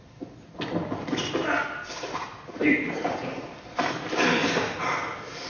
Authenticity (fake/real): real